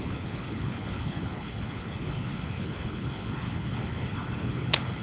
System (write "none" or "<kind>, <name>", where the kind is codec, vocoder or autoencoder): codec, HILCodec